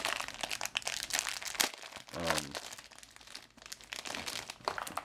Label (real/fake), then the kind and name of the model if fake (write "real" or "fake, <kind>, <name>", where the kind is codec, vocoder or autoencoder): real